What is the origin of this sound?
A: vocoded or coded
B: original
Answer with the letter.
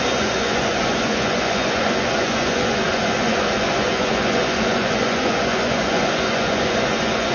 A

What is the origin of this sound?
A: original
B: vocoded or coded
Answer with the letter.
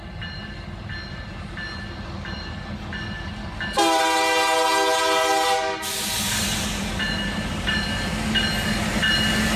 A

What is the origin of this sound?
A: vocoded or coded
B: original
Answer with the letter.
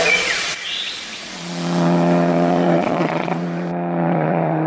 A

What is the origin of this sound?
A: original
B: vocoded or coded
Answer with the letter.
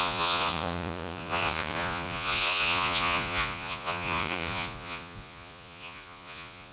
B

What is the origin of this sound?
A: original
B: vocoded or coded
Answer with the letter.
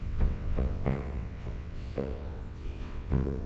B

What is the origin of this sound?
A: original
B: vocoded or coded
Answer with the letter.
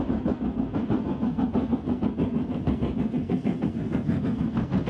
B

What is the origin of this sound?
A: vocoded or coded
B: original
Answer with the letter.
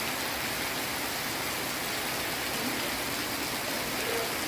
B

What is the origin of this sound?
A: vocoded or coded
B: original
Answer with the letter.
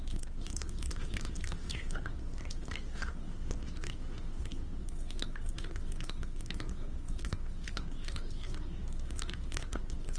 A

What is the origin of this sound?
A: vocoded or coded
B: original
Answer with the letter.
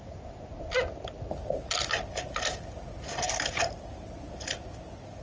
B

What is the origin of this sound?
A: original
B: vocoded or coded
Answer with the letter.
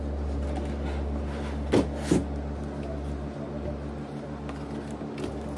A